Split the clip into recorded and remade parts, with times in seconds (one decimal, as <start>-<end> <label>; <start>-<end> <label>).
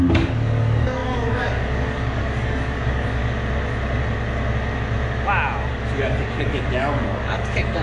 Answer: 0.0-3.2 remade; 3.2-5.7 recorded; 5.7-7.8 remade